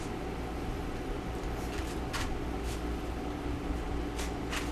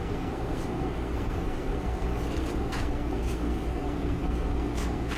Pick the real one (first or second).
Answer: first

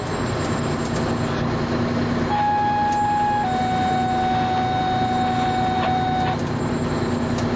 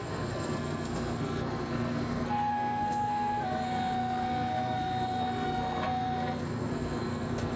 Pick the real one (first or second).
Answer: first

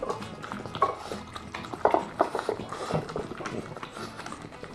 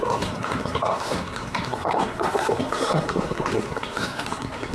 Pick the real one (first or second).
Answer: first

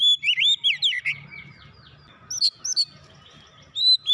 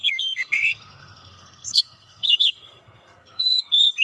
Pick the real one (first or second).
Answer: first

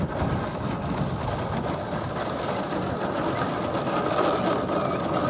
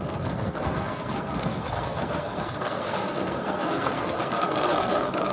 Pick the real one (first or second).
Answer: first